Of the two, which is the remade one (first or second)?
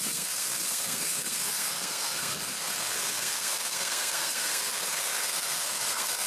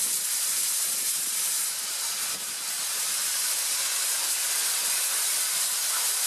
first